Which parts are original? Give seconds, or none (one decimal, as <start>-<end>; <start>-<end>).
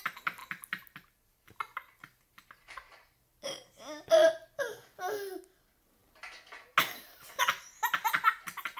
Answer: 0.0-8.8